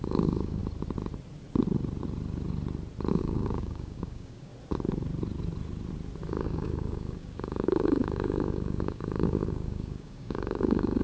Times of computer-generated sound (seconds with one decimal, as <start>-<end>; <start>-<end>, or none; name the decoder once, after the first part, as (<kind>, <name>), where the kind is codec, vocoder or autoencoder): 0.0-0.6 (codec, DAC); 3.1-4.5; 6.3-11.0